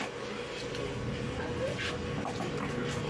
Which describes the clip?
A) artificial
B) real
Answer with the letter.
B